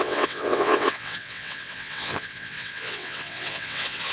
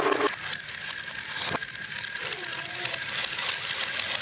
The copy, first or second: first